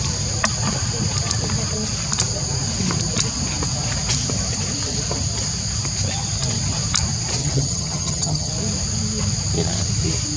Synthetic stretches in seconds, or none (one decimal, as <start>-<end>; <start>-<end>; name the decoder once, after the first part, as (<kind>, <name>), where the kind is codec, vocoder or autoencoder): 7.4-8.5 (vocoder, HiFi-GAN)

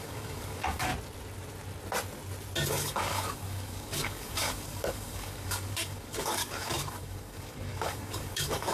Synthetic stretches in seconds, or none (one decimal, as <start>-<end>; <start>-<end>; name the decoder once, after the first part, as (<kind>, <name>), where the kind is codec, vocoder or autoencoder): 0.0-0.9 (codec, DAC); 2.7-8.7

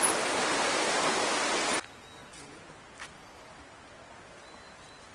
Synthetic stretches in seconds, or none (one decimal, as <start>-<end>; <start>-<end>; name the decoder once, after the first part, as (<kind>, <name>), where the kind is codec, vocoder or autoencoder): none